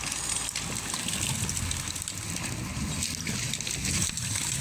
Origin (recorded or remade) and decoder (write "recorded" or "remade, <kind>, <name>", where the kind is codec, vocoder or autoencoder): recorded